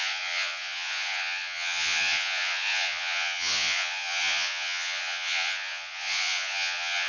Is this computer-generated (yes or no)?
yes